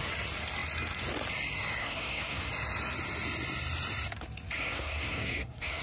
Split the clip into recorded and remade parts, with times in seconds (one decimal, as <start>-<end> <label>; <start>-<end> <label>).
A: 0.0-1.8 recorded; 1.8-2.5 remade; 2.5-4.6 recorded; 4.6-5.8 remade